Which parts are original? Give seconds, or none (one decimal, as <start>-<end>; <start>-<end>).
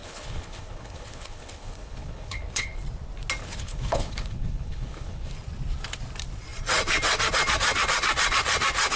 2.8-3.4; 5.3-9.0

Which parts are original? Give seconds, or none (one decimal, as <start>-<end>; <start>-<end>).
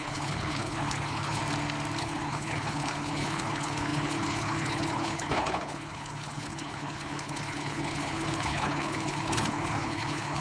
1.4-2.0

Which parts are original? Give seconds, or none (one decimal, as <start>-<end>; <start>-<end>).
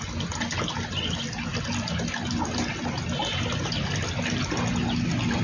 0.0-5.4